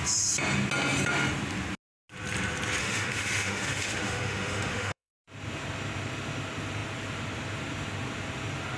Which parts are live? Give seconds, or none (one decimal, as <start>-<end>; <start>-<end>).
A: 0.0-2.8; 5.1-8.8